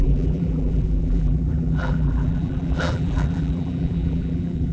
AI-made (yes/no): yes